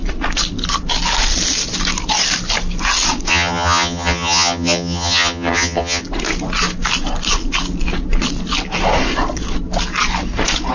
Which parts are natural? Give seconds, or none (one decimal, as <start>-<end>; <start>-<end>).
0.0-3.3; 6.0-10.7